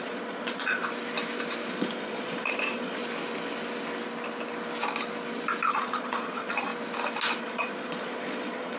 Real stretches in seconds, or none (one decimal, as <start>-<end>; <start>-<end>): 0.8-1.7; 3.0-5.7; 6.7-7.4